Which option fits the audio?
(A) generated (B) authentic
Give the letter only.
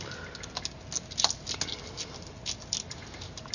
B